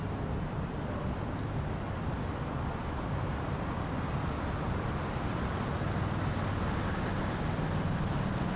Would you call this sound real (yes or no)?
yes